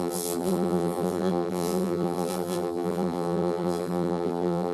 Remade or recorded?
remade